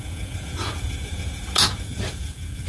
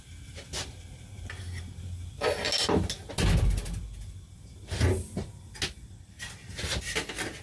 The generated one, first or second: first